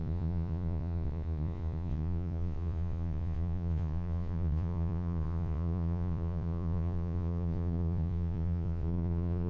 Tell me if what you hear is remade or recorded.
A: remade